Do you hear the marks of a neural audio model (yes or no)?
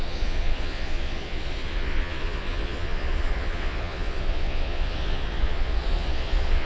yes